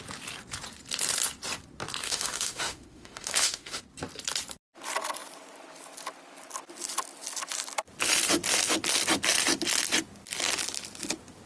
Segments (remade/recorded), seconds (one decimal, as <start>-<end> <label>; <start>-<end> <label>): 0.0-2.0 recorded; 2.0-3.8 remade; 3.8-11.5 recorded